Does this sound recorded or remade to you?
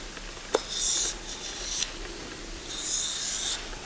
recorded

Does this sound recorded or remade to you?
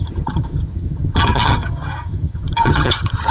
remade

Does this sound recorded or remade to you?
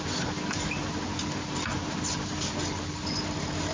recorded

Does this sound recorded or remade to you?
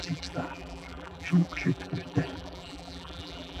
remade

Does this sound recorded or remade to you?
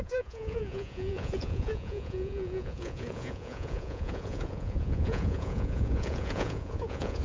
remade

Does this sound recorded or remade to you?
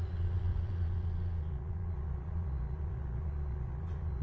remade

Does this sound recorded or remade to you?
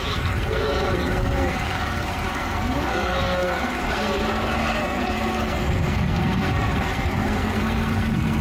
remade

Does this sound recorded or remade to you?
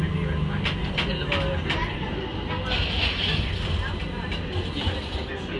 recorded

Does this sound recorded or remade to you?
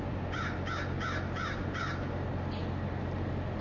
recorded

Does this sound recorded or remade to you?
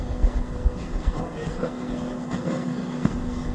remade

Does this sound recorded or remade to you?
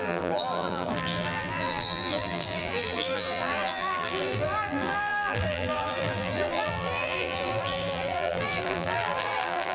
remade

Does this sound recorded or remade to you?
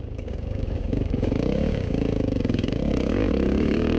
remade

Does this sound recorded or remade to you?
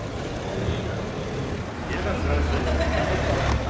recorded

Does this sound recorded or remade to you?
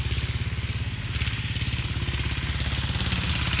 recorded